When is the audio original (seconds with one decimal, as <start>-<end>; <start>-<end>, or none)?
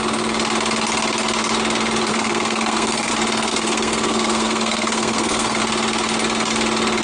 0.0-2.1; 3.1-3.5; 5.6-7.0